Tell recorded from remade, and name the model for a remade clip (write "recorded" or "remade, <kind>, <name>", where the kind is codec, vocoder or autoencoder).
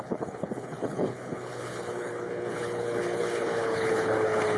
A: remade, codec, HILCodec